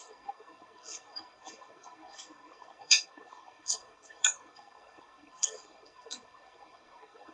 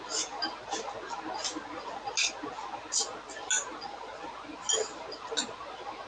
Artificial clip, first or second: first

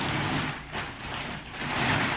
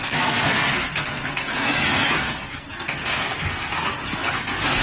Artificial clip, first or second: second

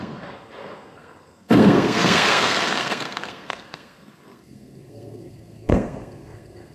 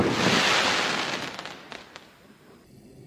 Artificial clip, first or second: first